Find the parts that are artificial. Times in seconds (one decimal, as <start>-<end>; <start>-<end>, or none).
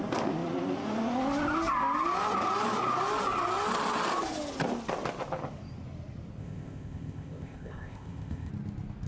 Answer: 6.4-8.5